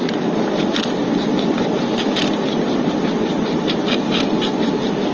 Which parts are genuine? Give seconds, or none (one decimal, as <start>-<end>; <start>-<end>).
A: 0.0-1.0; 4.1-5.1